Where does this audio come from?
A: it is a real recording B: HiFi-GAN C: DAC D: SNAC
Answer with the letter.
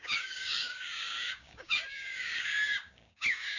C